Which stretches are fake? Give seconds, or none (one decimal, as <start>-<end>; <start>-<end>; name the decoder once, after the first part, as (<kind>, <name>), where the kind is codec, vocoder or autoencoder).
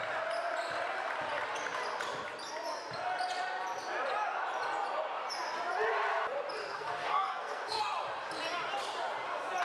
6.6-7.8 (codec, SNAC)